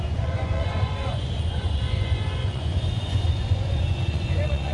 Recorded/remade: remade